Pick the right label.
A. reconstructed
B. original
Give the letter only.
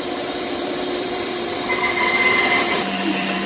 A